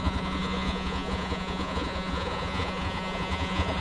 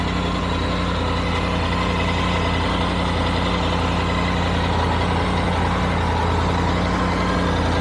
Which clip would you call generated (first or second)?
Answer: first